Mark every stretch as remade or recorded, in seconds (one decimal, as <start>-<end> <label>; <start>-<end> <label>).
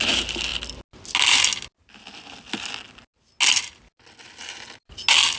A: 0.0-5.4 recorded